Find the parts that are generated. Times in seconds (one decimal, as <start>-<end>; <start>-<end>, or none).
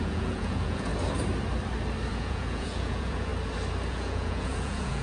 0.0-0.9; 2.1-3.3; 3.9-5.0